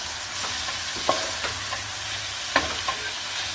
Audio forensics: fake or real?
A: real